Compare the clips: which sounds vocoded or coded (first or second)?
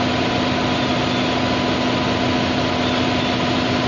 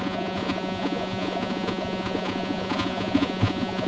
second